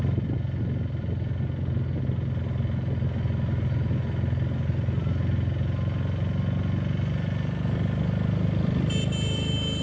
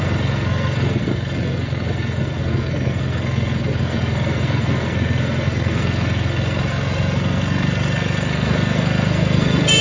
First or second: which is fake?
second